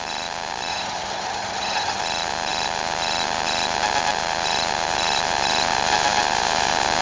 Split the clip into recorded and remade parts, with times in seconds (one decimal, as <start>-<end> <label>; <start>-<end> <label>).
0.0-0.7 recorded; 0.7-2.0 remade; 2.0-7.0 recorded